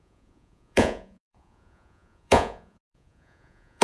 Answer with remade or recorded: remade